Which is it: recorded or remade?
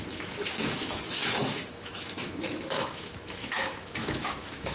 remade